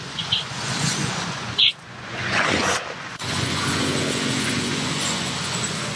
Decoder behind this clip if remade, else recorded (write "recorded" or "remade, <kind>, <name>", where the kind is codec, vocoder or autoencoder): remade, vocoder, Vocos